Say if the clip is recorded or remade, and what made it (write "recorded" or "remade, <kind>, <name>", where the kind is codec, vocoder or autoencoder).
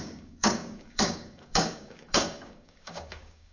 remade, codec, DAC